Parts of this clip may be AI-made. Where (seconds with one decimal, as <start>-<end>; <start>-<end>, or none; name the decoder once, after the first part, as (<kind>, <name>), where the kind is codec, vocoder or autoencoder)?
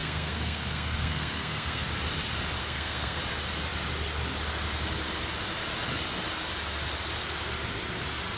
0.0-1.9 (codec, SNAC); 2.6-3.2